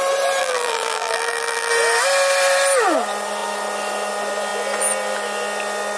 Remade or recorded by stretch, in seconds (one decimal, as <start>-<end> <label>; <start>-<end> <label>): 0.0-0.4 recorded; 0.4-1.7 remade; 1.7-6.0 recorded